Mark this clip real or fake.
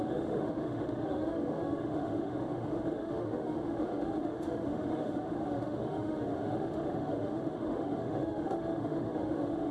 fake